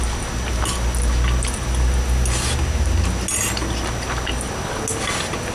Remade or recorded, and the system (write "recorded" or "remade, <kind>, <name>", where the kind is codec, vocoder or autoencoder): recorded